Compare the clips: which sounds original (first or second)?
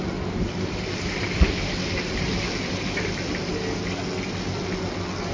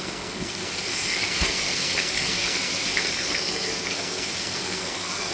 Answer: first